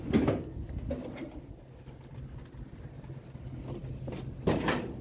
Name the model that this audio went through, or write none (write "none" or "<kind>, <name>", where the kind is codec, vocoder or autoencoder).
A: none